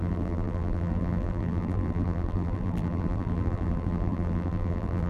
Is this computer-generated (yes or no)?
yes